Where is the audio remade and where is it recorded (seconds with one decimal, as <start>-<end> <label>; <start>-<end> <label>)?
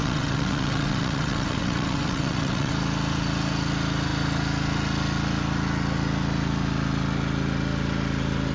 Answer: 0.0-2.7 remade; 2.7-8.5 recorded